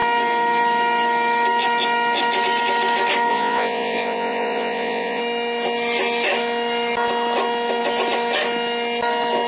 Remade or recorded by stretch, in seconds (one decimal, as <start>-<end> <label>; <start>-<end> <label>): 0.0-3.3 recorded; 3.3-5.2 remade; 5.2-9.5 recorded